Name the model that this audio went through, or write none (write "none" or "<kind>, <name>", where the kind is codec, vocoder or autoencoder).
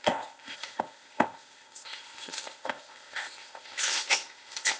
codec, ZipCodec